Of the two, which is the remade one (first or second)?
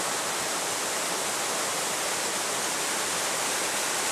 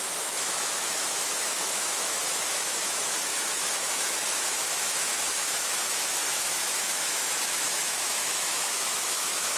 second